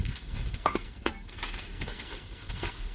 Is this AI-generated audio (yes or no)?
yes